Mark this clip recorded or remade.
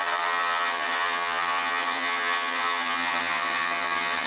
remade